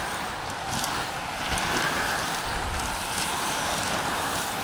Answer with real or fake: fake